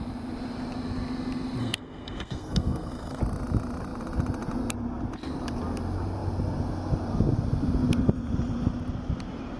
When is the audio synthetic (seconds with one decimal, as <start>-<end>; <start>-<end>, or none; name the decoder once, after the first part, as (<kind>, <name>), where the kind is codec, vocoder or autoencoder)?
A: 1.6-3.2 (codec, SNAC)